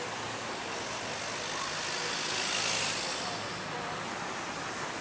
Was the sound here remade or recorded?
recorded